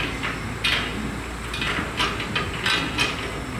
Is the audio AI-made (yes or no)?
no